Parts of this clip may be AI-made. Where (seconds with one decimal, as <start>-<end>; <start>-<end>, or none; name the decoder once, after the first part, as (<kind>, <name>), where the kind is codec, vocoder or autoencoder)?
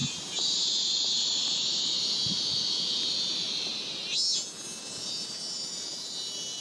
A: 0.0-3.7 (vocoder, BigVGAN v2); 4.8-6.6